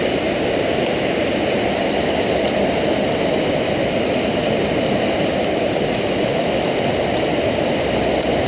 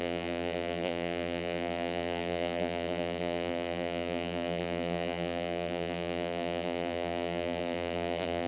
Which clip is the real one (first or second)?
first